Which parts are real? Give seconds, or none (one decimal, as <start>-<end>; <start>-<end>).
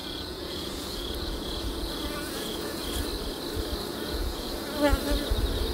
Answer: 2.8-3.9; 4.5-5.7